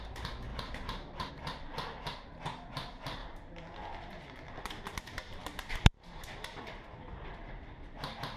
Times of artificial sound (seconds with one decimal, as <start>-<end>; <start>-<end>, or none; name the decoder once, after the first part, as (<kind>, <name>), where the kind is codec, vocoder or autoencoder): none